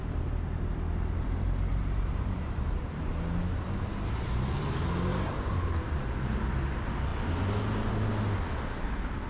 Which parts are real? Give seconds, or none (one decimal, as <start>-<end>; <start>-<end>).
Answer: 0.0-1.7; 3.1-5.1; 5.6-9.3